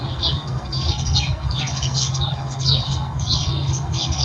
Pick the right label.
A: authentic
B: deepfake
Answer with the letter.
B